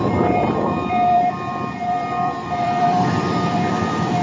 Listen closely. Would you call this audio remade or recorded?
remade